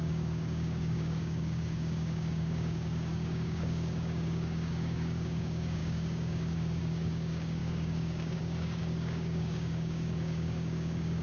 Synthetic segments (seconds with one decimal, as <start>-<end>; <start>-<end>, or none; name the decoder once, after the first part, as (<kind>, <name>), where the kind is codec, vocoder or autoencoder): 0.0-11.2 (codec, DAC)